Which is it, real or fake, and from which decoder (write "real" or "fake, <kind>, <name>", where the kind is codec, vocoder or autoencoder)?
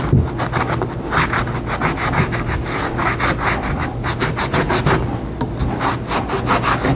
real